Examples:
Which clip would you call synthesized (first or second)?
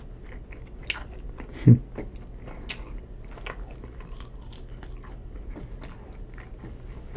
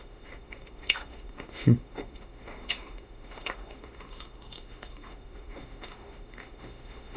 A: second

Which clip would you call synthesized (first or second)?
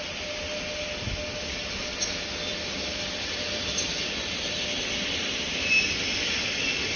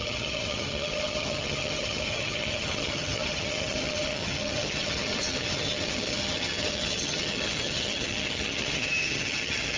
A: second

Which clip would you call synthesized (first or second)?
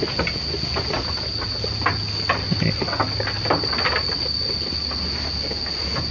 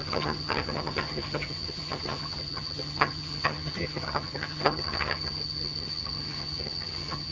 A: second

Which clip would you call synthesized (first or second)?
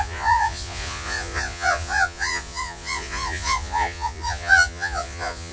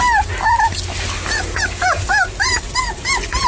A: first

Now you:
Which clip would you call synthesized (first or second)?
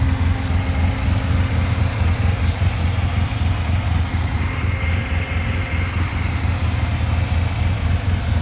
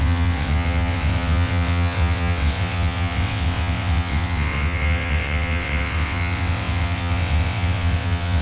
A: second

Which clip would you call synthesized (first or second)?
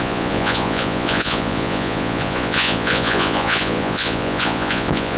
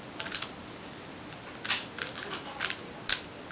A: first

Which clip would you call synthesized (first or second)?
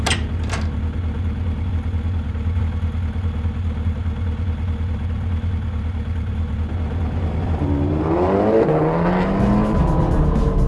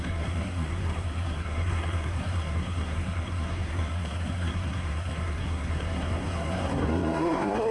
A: second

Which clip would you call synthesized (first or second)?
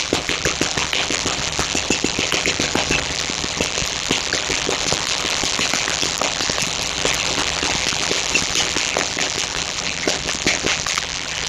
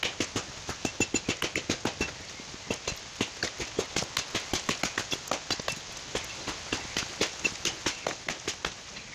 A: first